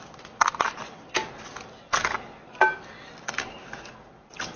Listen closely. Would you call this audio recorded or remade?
recorded